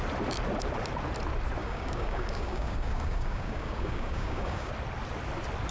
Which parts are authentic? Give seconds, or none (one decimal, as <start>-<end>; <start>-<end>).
0.0-1.6; 4.7-5.7